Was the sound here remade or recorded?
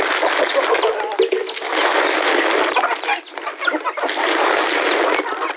recorded